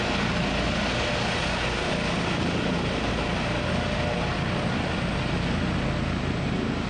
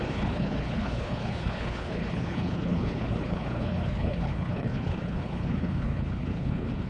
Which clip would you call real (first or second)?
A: first